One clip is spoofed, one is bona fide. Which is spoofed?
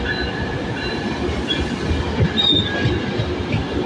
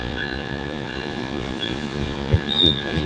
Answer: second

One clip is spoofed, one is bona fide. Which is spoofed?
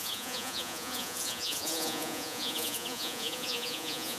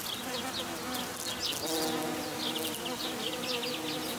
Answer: first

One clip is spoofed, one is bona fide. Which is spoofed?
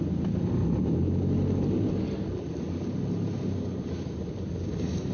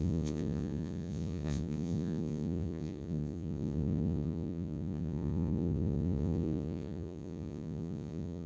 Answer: second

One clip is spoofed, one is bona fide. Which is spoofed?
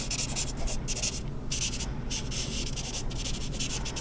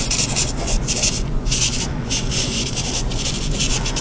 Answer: second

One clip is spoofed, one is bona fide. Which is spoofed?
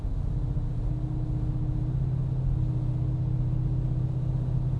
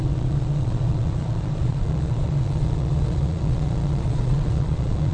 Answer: second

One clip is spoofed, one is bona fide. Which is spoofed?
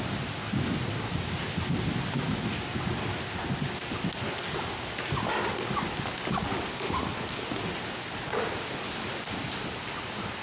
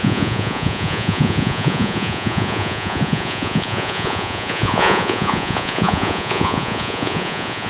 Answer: second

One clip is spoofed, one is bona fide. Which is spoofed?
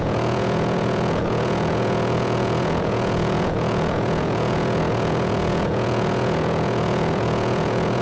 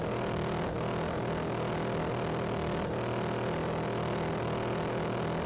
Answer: first